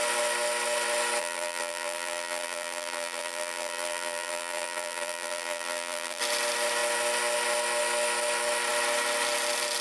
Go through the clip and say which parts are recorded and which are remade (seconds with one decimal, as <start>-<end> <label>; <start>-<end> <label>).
0.0-1.2 recorded; 1.2-6.2 remade; 6.2-9.8 recorded